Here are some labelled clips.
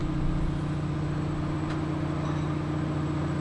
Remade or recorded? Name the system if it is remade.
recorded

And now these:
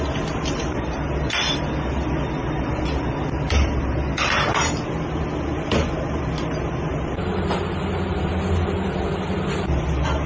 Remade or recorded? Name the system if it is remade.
recorded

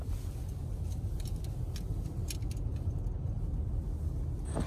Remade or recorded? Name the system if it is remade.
recorded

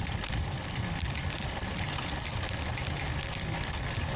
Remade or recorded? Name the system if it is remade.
recorded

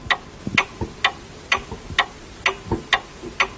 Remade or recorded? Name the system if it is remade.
recorded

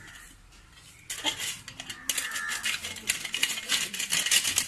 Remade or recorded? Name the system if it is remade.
recorded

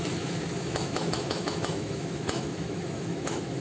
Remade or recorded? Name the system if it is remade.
remade, autoencoder, DAC-VAE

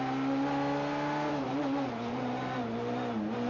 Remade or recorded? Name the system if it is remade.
recorded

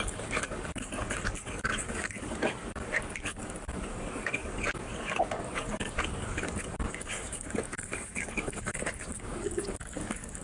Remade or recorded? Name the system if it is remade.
remade, codec, DAC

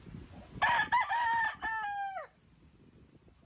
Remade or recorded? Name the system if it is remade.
recorded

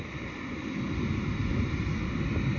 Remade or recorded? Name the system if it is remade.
recorded